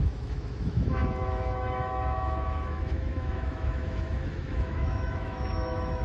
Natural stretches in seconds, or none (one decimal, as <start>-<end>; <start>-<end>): none